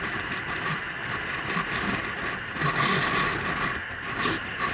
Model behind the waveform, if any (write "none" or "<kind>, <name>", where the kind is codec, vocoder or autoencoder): none